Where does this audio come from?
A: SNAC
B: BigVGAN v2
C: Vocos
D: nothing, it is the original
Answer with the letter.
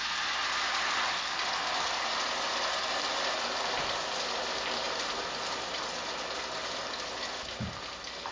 D